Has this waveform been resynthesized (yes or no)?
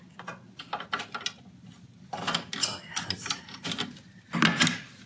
no